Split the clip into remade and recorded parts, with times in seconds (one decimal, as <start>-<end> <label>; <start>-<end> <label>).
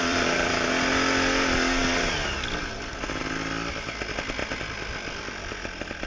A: 0.0-0.7 remade; 0.7-1.8 recorded; 1.8-2.9 remade; 2.9-4.4 recorded; 4.4-5.2 remade; 5.2-6.1 recorded